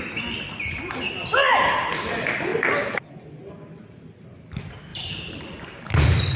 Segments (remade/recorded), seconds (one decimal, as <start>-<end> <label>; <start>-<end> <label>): 0.0-4.9 recorded; 4.9-6.0 remade; 6.0-6.4 recorded